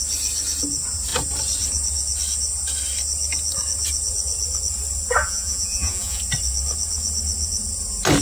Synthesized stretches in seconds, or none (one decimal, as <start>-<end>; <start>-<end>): 5.2-6.2